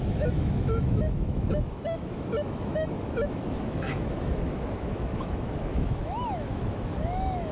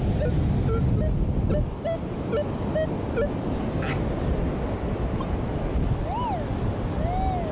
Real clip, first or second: second